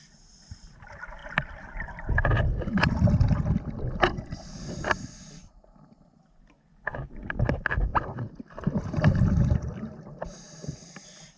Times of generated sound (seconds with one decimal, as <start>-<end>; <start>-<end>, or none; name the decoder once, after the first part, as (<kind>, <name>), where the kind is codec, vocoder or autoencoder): 7.9-10.2 (vocoder, BigVGAN v2)